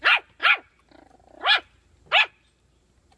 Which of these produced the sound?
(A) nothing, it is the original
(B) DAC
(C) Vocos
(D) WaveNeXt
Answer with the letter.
A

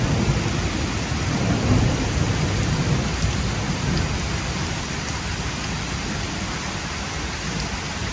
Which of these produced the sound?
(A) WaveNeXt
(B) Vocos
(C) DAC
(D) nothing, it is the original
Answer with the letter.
D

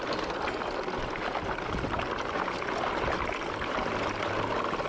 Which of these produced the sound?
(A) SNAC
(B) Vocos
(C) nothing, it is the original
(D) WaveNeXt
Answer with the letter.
C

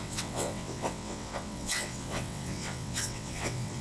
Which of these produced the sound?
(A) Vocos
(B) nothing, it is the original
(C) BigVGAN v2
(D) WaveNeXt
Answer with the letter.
D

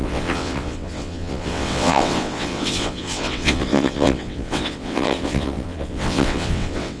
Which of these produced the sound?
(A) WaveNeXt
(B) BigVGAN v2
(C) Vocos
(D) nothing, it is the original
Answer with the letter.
A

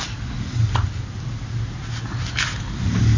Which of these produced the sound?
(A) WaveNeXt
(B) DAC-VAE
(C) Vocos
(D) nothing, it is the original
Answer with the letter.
D